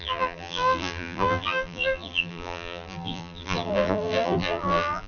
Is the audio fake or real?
fake